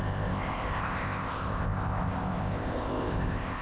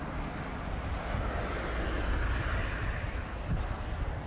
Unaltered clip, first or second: second